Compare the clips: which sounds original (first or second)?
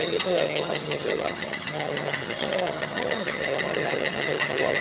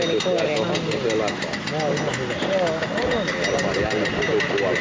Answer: second